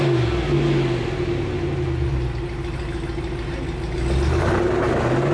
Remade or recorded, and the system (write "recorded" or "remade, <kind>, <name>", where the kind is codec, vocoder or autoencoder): recorded